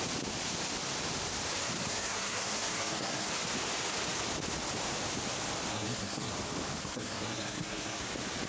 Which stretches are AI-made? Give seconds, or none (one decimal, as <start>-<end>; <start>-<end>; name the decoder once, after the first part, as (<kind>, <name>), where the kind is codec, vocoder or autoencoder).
1.9-3.3 (codec, SNAC); 5.7-6.3; 6.8-8.0